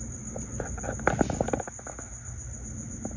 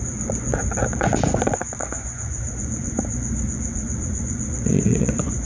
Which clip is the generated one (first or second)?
second